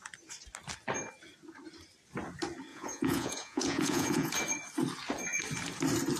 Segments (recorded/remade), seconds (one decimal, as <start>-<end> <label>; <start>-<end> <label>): 0.0-2.7 recorded; 2.7-4.3 remade; 4.3-6.2 recorded